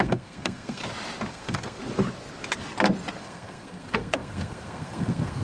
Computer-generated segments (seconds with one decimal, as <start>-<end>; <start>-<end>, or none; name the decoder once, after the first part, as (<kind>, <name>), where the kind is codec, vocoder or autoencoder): 0.0-0.8 (codec, SNAC); 1.3-1.8; 3.2-5.4